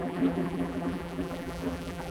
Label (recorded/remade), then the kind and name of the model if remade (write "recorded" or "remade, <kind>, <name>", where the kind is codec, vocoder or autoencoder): remade, vocoder, BigVGAN v2